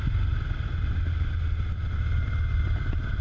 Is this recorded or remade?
recorded